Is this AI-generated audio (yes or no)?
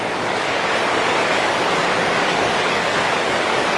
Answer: yes